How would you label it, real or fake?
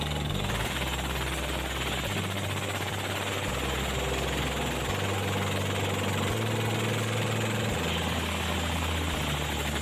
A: real